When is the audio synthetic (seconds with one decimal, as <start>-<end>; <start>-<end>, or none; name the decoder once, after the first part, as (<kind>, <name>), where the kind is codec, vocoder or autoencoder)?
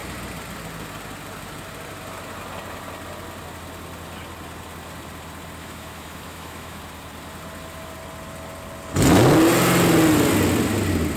5.6-6.8 (autoencoder, DAC-VAE)